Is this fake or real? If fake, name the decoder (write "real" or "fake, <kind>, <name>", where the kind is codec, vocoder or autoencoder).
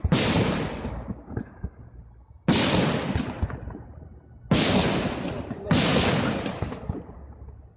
real